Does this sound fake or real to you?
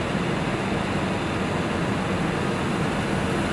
real